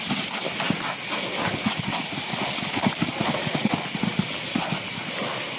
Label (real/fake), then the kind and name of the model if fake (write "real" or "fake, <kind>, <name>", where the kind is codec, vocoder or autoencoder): real